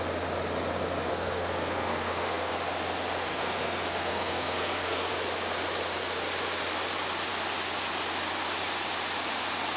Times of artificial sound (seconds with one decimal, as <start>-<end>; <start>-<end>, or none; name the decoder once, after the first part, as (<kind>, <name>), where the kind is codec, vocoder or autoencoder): 1.1-2.5 (codec, SNAC); 3.3-5.1